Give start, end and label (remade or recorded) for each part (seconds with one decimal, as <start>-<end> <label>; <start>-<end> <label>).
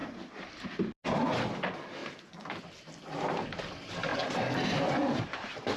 0.0-4.1 recorded; 4.1-5.8 remade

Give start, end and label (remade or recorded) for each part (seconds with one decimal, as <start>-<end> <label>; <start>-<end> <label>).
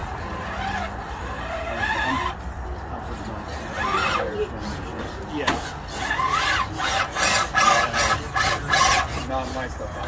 0.0-10.1 recorded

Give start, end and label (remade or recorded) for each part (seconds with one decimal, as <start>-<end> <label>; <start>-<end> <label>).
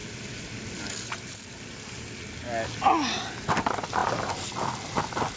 0.0-0.9 remade; 0.9-5.4 recorded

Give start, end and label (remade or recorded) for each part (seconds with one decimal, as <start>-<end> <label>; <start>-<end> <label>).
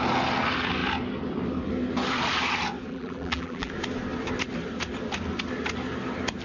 0.0-2.9 recorded; 2.9-3.7 remade; 3.7-6.4 recorded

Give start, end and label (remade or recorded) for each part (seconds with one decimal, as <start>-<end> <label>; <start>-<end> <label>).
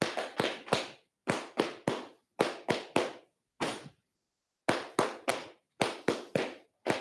0.0-1.2 recorded; 1.2-4.5 remade; 4.5-5.3 recorded; 5.3-6.1 remade; 6.1-7.0 recorded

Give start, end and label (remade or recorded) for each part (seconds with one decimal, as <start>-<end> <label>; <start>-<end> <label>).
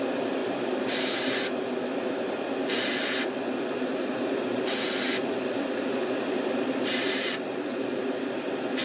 0.0-0.4 recorded; 0.4-1.6 remade; 1.6-3.9 recorded; 3.9-8.0 remade; 8.0-8.8 recorded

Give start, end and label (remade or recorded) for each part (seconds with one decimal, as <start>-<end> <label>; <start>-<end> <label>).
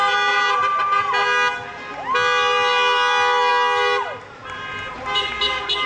0.0-5.9 recorded